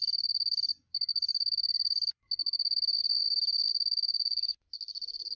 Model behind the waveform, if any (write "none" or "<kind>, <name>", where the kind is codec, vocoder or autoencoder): none